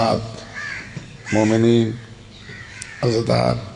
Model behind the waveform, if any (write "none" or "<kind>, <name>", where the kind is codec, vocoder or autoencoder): codec, DAC